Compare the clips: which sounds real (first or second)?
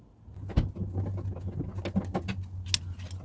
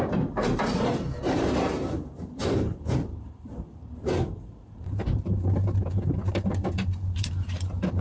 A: first